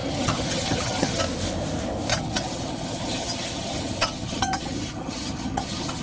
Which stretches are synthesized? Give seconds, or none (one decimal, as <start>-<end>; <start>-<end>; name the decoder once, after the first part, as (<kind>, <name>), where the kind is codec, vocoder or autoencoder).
0.0-1.2 (vocoder, HiFi-GAN); 2.1-6.0